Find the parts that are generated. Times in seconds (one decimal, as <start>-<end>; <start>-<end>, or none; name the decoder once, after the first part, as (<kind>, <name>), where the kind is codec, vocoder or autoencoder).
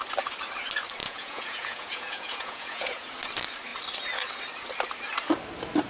1.0-3.1 (vocoder, Vocos)